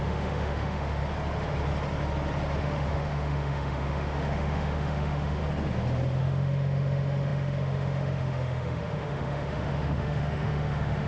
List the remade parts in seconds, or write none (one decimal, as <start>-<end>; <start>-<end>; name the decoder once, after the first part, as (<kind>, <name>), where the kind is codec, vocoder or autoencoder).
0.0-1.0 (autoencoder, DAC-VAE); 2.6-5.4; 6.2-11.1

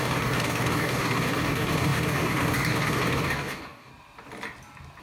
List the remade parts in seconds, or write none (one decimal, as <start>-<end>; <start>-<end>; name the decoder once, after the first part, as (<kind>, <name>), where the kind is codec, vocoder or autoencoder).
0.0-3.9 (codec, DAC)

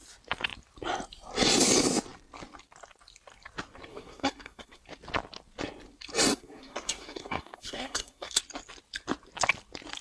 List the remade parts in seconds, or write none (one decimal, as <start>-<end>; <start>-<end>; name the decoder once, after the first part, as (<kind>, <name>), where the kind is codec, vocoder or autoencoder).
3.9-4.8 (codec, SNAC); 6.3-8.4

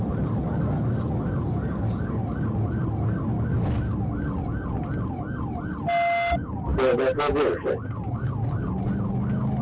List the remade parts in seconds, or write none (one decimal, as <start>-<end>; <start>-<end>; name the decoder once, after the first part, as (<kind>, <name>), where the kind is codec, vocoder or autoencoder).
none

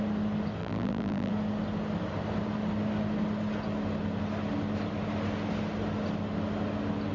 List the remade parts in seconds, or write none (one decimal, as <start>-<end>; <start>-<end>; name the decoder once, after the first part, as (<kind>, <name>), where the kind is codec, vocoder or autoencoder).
0.6-1.3 (vocoder, BigVGAN v2)

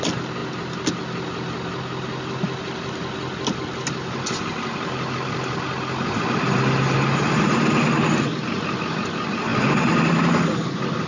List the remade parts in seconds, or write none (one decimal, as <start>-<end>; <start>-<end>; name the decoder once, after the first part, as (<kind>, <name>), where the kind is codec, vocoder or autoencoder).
none

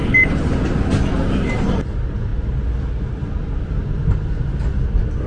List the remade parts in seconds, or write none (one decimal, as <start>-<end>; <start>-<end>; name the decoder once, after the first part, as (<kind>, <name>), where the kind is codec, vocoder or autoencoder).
none

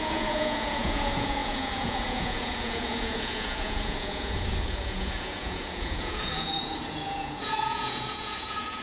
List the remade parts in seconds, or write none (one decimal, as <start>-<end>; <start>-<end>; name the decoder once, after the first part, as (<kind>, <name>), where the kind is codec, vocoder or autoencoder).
0.0-8.8 (vocoder, Vocos)